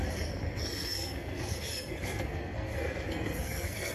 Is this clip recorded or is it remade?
remade